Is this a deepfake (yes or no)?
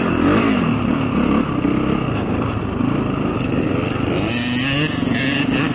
no